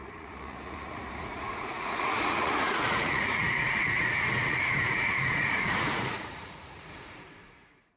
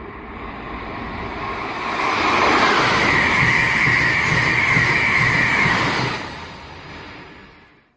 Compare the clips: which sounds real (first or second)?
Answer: second